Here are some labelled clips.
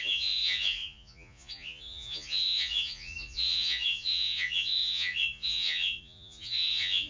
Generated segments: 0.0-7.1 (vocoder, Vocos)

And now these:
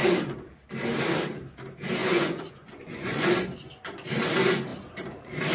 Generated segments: 2.0-3.3 (vocoder, Vocos)

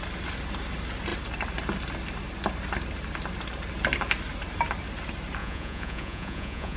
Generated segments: 5.4-6.8 (vocoder, Vocos)